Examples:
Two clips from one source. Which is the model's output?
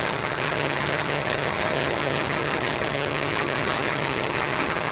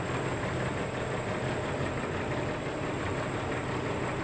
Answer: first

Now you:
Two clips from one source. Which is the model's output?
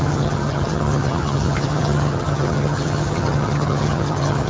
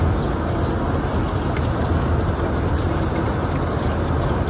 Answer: first